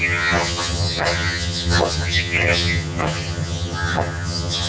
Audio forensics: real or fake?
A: fake